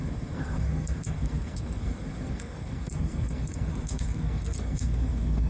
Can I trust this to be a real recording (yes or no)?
no